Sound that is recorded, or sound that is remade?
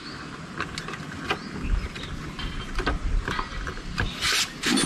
recorded